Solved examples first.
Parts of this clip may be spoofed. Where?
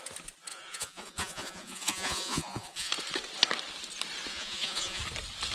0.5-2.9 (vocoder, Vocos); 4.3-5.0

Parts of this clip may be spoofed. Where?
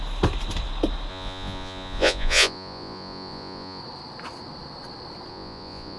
1.1-3.8 (vocoder, Vocos); 5.3-6.0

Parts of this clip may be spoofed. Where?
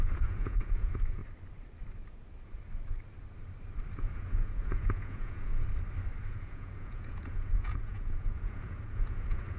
0.0-1.2 (vocoder, Vocos); 4.0-5.5; 6.3-9.6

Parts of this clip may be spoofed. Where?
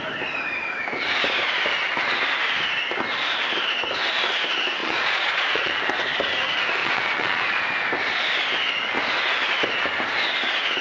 4.8-5.7 (vocoder, Vocos); 6.8-7.6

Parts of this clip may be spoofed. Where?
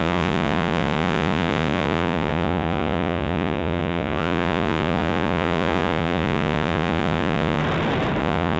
0.0-7.6 (vocoder, Vocos); 8.2-8.6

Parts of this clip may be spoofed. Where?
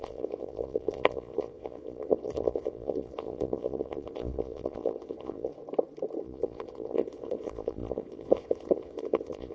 0.0-5.5 (vocoder, Vocos); 6.2-9.5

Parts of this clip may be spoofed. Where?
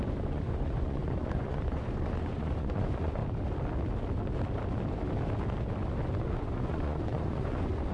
0.0-3.2 (vocoder, Vocos); 6.2-7.9